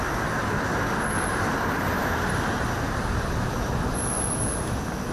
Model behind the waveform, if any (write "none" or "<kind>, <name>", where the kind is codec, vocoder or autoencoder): none